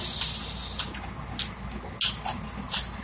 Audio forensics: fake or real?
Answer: real